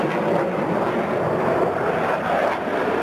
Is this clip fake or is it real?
real